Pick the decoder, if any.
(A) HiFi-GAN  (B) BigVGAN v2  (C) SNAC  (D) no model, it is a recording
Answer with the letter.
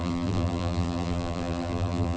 B